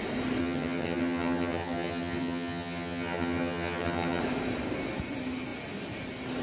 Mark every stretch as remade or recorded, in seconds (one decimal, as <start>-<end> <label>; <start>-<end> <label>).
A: 0.0-0.4 recorded; 0.4-4.2 remade; 4.2-6.4 recorded